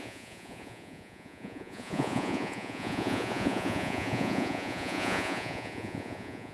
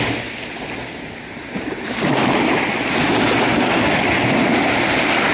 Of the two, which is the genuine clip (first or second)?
second